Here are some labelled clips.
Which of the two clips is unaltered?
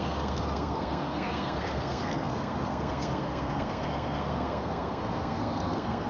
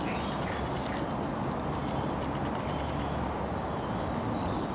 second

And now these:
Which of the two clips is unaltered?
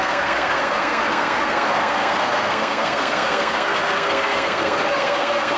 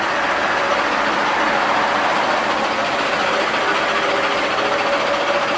second